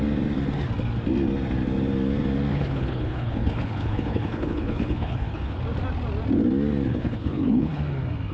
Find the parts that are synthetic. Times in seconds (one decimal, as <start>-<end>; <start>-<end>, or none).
2.5-5.6; 6.9-7.8